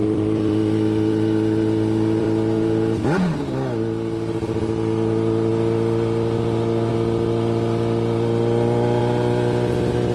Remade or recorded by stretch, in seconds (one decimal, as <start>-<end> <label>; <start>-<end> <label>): 0.0-3.5 remade; 3.5-10.1 recorded